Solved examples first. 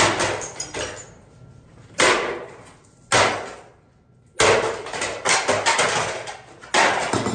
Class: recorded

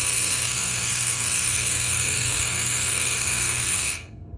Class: remade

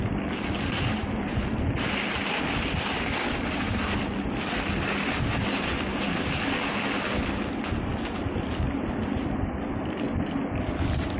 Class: recorded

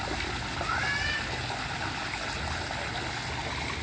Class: recorded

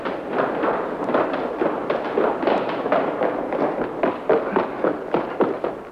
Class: recorded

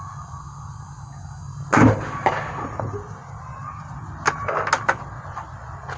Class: recorded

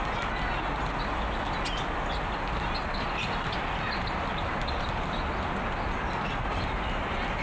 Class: recorded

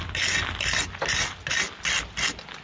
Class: recorded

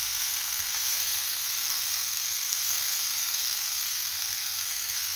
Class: remade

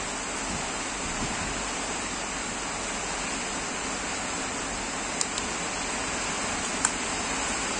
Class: recorded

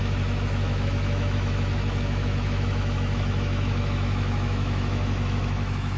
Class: remade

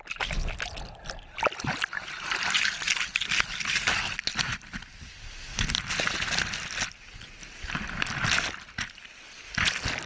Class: recorded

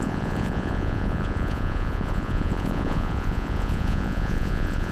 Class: remade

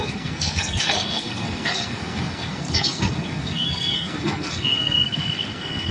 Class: remade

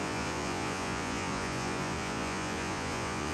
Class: remade